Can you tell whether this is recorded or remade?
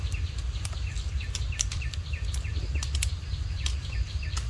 remade